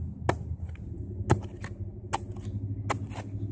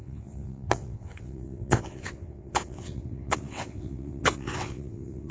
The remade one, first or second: second